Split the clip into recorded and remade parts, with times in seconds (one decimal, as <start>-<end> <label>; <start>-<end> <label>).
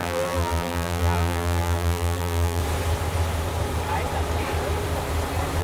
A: 0.0-2.6 remade; 2.6-5.6 recorded